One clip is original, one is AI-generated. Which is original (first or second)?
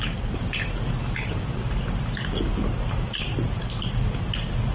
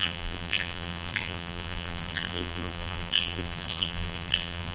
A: first